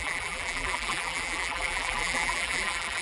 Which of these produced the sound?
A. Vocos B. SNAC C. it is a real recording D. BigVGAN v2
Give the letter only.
D